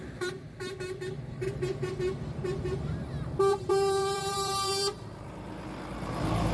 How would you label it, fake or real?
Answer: fake